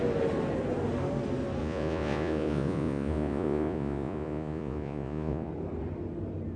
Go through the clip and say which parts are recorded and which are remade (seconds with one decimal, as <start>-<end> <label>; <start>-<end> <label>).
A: 0.0-1.6 recorded; 1.6-5.5 remade; 5.5-6.6 recorded

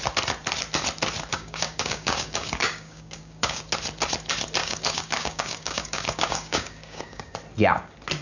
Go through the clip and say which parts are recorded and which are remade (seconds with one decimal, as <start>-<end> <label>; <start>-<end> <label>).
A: 0.0-1.3 recorded; 1.3-3.6 remade; 3.6-4.6 recorded; 4.6-7.3 remade; 7.3-8.2 recorded

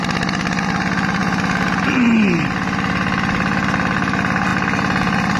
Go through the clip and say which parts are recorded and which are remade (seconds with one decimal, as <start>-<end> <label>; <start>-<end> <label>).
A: 0.0-5.4 recorded

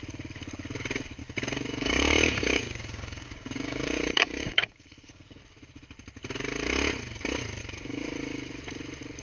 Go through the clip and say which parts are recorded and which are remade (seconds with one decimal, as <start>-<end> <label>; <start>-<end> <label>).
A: 0.0-1.2 recorded; 1.2-5.4 remade; 5.4-7.6 recorded; 7.6-8.1 remade; 8.1-9.2 recorded